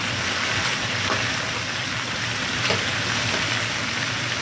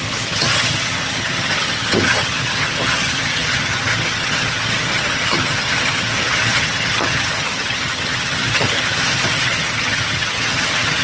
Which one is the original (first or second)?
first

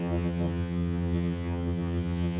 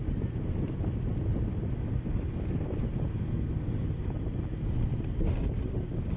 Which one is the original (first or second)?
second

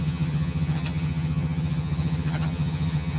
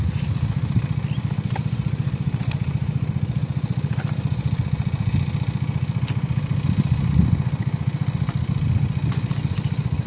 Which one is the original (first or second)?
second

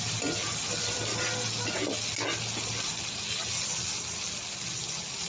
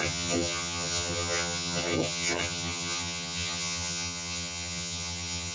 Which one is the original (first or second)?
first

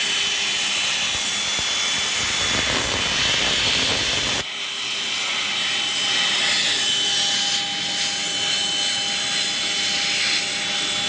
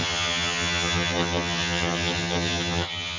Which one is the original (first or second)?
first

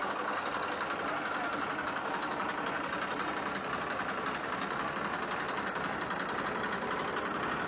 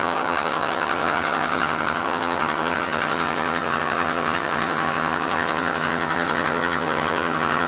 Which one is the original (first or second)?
first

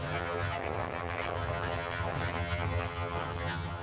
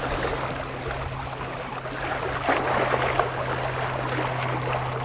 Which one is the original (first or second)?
second